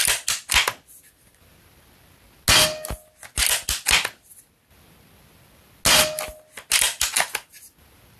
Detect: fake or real real